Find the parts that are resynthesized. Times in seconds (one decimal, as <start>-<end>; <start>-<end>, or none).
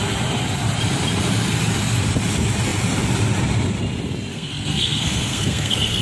4.3-6.0